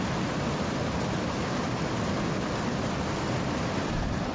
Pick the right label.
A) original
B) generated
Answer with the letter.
A